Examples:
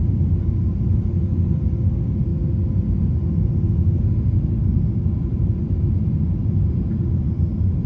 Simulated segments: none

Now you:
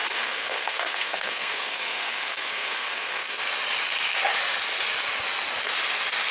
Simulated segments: 0.0-3.4

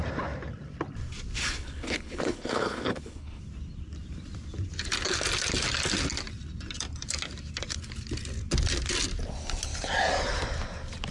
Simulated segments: 1.4-3.4

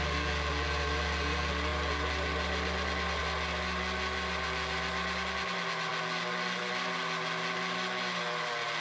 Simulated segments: none

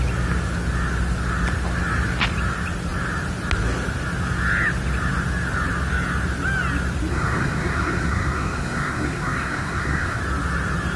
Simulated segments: 7.1-10.2

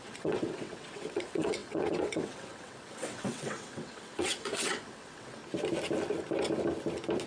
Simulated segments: 0.0-5.4

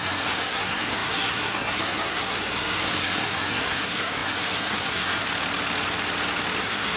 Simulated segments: 0.0-5.2; 6.6-7.0

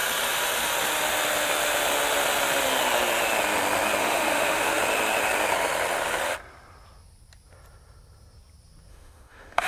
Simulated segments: 4.0-4.8; 8.9-9.7